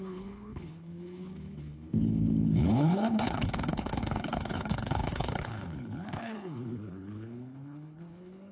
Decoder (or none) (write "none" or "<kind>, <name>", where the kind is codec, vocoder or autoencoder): codec, HILCodec